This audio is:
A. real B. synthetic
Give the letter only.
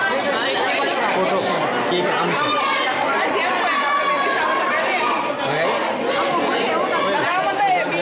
A